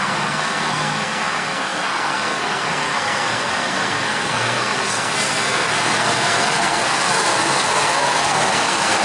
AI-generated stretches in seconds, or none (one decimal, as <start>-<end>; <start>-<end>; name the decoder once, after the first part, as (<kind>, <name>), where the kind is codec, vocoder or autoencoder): 0.0-9.0 (codec, SNAC)